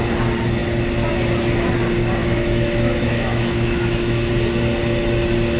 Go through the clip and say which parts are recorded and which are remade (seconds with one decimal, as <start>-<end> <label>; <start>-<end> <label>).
0.0-2.2 recorded; 2.2-4.3 remade; 4.3-5.6 recorded